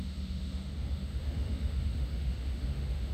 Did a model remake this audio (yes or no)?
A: yes